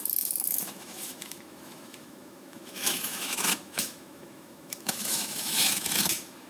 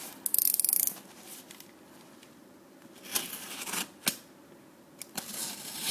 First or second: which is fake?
first